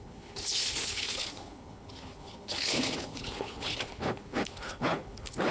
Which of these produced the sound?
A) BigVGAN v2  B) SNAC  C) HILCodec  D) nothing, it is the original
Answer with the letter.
C